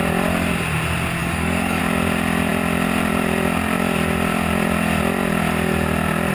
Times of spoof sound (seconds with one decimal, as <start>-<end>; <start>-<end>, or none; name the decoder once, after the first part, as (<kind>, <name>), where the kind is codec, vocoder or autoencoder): 1.2-1.8 (codec, DAC)